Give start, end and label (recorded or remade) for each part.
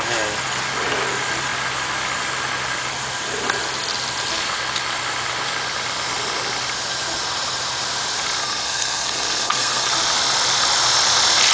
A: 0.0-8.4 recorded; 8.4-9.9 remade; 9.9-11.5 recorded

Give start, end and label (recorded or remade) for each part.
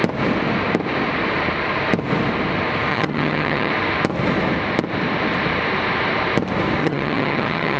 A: 0.0-2.9 recorded; 2.9-3.7 remade; 3.7-6.8 recorded; 6.8-7.8 remade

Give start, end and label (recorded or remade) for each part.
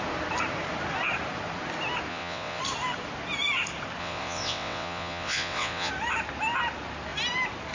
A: 0.0-2.1 recorded; 2.1-2.6 remade; 2.6-4.0 recorded; 4.0-5.9 remade; 5.9-7.7 recorded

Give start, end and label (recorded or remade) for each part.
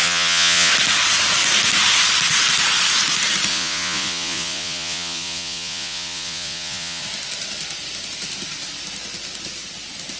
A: 0.0-0.7 remade; 0.7-3.5 recorded; 3.5-7.0 remade; 7.0-10.2 recorded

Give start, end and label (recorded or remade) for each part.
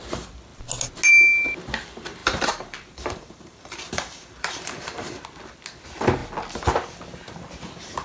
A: 0.0-2.2 recorded; 2.2-5.1 remade; 5.1-8.0 recorded